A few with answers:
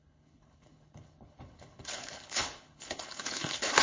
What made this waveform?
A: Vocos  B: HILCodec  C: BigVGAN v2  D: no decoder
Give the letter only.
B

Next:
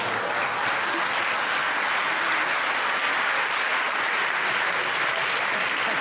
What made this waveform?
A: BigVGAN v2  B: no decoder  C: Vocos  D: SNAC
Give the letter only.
B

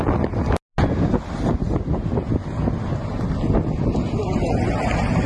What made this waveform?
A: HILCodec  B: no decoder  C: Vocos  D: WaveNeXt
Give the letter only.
B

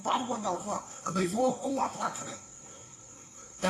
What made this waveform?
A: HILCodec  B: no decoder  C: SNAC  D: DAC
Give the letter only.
C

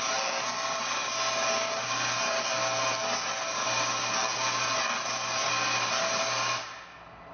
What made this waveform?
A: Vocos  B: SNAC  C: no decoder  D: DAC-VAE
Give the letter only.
C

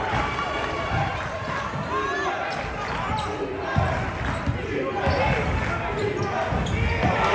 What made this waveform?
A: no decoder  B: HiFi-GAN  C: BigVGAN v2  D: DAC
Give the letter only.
A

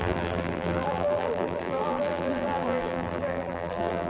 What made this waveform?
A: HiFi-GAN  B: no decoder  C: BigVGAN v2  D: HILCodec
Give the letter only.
C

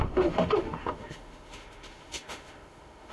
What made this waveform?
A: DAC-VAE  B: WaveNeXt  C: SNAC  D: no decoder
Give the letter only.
A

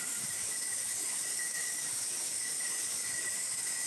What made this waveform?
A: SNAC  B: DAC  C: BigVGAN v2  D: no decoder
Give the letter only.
B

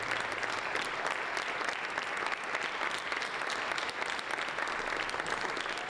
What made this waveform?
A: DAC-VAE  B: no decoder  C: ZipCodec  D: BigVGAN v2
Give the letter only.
B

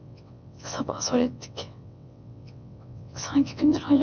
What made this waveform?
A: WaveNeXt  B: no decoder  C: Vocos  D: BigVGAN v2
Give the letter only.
A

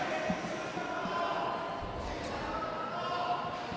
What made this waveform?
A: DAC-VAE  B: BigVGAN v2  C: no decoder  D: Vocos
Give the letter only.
C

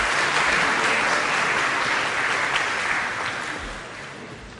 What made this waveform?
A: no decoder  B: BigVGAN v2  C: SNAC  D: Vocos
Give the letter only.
A